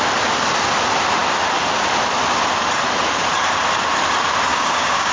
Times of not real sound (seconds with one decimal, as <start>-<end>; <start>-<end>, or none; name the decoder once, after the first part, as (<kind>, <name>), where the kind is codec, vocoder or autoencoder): 4.5-5.1 (codec, DAC)